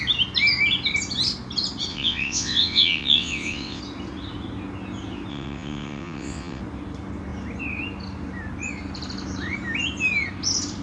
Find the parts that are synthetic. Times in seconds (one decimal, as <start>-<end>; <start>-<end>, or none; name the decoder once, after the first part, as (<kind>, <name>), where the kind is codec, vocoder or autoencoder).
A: 1.9-3.8 (vocoder, WaveNeXt); 5.3-6.6